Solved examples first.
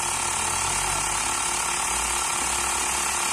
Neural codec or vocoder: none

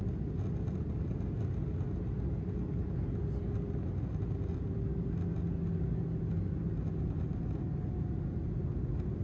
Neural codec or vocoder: none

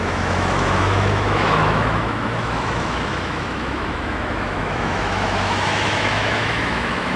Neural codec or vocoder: autoencoder, DAC-VAE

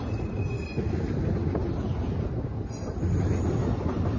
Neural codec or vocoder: none